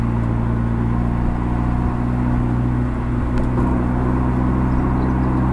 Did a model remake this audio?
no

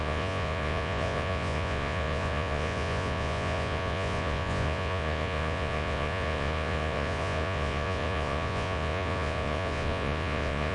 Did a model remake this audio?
yes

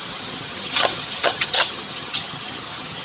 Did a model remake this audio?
yes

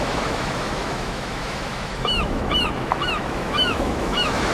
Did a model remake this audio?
yes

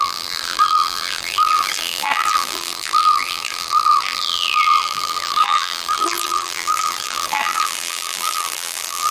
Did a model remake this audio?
yes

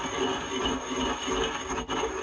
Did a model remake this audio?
no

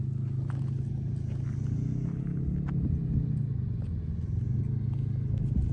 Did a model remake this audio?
no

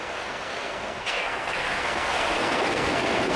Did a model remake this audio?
yes